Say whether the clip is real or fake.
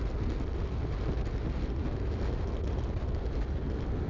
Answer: real